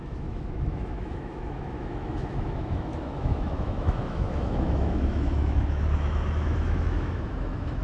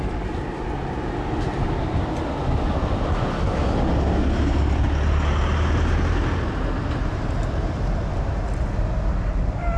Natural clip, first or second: second